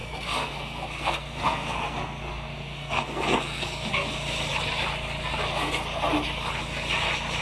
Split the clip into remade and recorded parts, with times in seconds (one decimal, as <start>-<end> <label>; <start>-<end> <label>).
0.0-3.9 remade; 3.9-7.4 recorded